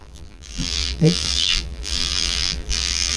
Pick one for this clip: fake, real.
fake